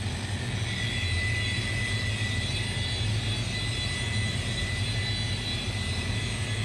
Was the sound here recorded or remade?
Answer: recorded